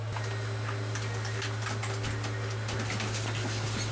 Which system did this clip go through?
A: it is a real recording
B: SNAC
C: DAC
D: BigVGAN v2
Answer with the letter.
A